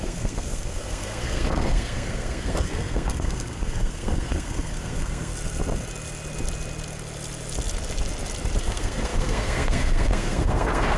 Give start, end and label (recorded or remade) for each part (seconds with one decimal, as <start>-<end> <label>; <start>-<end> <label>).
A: 0.0-5.3 remade; 5.3-8.6 recorded; 8.6-11.0 remade